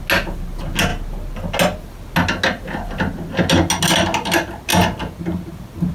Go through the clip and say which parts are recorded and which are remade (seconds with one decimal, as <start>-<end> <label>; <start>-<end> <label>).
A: 0.0-5.9 recorded